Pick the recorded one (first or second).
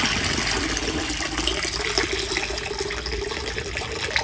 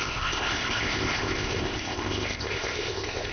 first